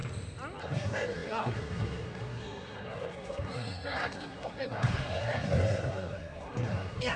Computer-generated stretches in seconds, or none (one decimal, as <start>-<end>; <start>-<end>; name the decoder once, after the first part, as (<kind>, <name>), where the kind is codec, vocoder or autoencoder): 0.6-7.2 (codec, SNAC)